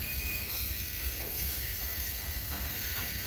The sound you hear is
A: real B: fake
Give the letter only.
B